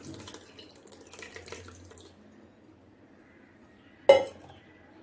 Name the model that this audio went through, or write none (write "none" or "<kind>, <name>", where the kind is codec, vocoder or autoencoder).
none